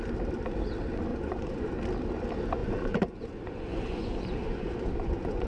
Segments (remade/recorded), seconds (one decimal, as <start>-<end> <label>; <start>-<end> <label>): 0.0-1.1 recorded; 1.1-1.7 remade; 1.7-2.6 recorded; 2.6-5.5 remade